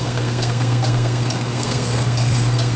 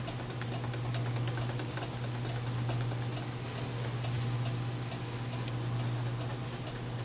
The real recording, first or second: second